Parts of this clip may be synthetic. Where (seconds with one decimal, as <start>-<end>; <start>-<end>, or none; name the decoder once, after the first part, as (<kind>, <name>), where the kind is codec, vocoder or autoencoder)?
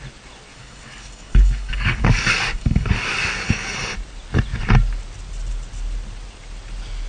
0.5-3.7 (codec, DAC)